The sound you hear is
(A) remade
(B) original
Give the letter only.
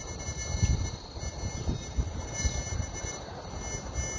B